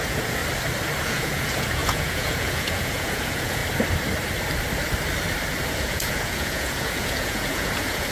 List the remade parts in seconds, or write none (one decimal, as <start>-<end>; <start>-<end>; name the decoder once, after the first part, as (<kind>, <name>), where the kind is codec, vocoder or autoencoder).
0.0-0.4 (vocoder, Vocos); 1.0-3.6; 5.7-8.1